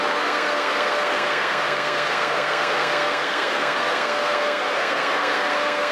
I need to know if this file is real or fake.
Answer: fake